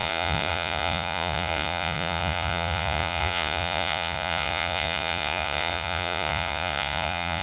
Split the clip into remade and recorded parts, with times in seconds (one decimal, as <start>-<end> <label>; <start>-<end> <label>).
0.0-7.4 remade